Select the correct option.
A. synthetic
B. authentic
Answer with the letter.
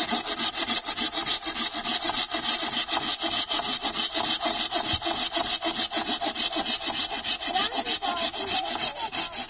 B